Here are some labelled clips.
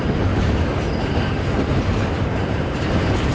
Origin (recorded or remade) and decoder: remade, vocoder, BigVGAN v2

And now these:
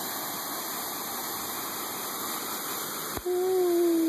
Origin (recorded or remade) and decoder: recorded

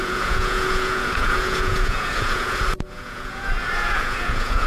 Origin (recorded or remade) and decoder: remade, vocoder, Vocos